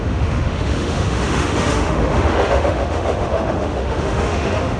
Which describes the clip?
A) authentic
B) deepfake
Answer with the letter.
B